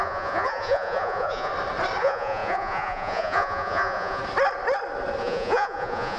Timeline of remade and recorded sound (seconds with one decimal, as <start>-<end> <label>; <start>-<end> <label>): 0.0-1.5 remade; 1.5-2.0 recorded; 2.0-4.2 remade; 4.2-5.2 recorded; 5.2-6.2 remade